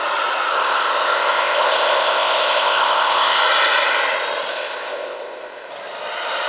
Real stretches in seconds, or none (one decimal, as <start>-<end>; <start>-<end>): 0.0-0.5; 3.4-4.5; 5.7-6.5